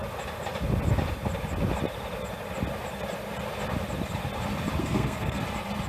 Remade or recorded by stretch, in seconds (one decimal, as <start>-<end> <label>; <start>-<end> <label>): 0.0-4.8 recorded; 4.8-5.4 remade; 5.4-5.9 recorded